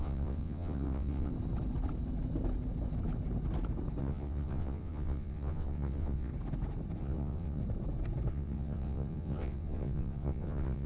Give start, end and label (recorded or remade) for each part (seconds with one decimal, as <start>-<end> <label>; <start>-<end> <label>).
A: 0.0-1.3 remade; 1.3-4.0 recorded; 4.0-6.3 remade; 6.3-7.0 recorded; 7.0-7.6 remade; 7.6-8.3 recorded; 8.3-10.9 remade